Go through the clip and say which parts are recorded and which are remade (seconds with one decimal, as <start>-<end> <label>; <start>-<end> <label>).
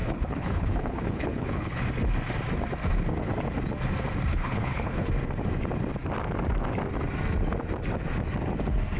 0.0-1.8 remade; 1.8-4.3 recorded; 4.3-5.1 remade; 5.1-9.0 recorded